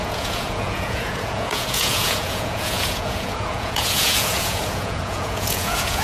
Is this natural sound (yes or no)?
no